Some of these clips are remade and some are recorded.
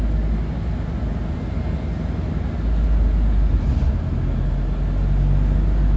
recorded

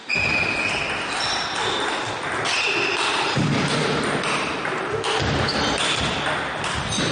recorded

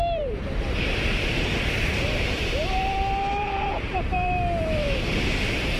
remade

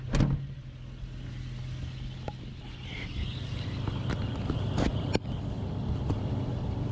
recorded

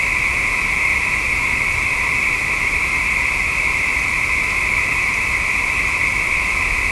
recorded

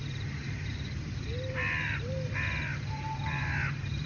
remade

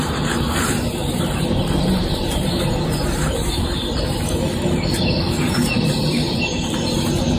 remade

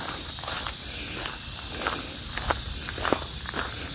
recorded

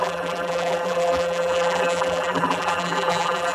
remade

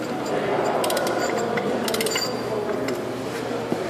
recorded